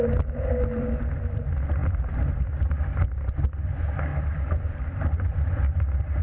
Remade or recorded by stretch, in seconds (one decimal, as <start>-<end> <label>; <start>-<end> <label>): 0.0-1.8 recorded; 1.8-2.7 remade; 2.7-4.1 recorded; 4.1-6.2 remade